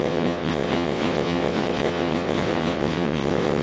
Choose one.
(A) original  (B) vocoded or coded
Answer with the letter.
B